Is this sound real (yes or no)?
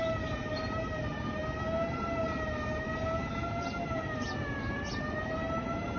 no